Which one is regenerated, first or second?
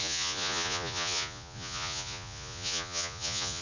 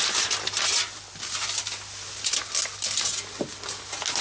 first